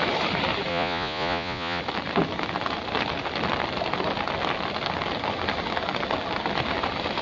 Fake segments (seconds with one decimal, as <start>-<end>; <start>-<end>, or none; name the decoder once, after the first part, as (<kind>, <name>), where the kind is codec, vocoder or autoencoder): 0.7-1.8 (vocoder, Vocos)

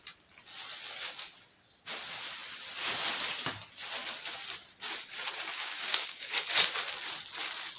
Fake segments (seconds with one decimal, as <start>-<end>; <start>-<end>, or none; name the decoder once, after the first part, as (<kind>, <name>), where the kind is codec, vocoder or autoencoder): 5.5-6.3 (codec, DAC)

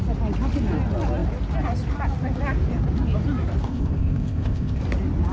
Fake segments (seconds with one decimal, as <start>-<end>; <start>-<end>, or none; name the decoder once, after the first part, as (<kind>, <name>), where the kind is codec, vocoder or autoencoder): 3.7-4.8 (codec, ZipCodec)

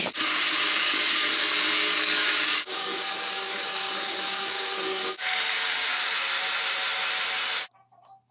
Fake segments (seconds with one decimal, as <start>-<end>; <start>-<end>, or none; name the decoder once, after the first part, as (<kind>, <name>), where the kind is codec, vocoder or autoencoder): 0.0-5.8 (codec, DAC)

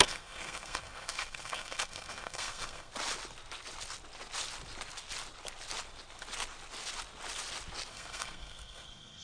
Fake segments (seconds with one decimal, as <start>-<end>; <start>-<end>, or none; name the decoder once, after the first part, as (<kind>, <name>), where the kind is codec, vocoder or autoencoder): 0.0-2.9 (codec, SNAC); 7.9-9.2

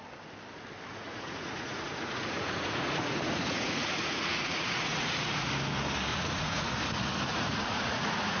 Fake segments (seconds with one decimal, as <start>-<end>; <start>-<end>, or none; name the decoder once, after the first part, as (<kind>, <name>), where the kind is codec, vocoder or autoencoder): 0.9-5.5 (vocoder, Vocos); 6.1-6.7; 7.3-8.4

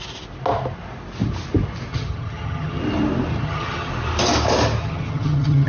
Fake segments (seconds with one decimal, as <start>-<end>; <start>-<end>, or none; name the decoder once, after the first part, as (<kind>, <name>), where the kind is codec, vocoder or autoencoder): 1.9-2.8 (vocoder, HiFi-GAN); 3.3-3.9; 4.8-5.7